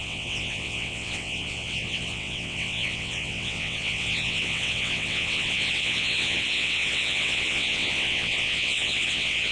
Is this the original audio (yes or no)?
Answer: no